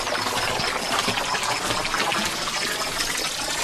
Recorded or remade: recorded